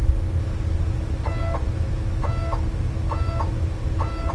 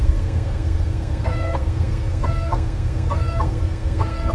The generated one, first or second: second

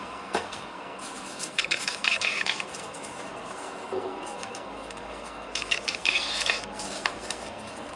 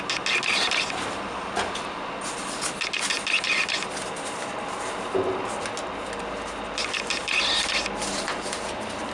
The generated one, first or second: first